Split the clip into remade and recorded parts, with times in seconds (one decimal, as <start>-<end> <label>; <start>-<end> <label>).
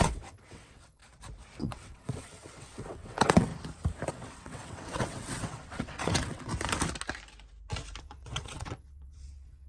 0.0-1.0 remade; 1.0-1.6 recorded; 1.6-3.5 remade; 3.5-4.1 recorded; 4.1-6.5 remade; 6.5-8.0 recorded; 8.0-9.7 remade